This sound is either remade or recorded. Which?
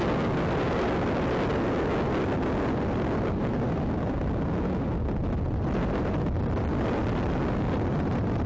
recorded